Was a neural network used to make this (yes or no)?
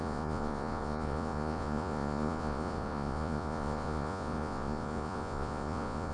yes